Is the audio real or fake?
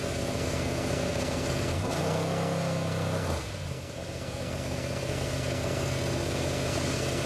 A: fake